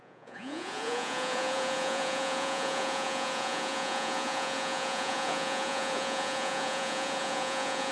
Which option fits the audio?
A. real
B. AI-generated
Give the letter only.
B